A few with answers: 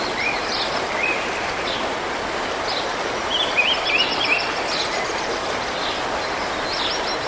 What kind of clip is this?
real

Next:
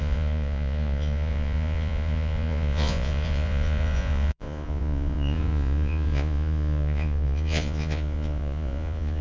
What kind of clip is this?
fake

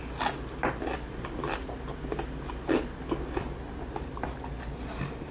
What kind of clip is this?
real